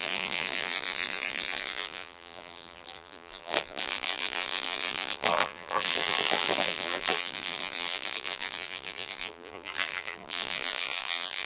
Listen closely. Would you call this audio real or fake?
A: fake